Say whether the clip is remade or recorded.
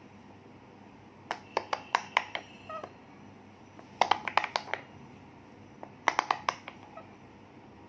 recorded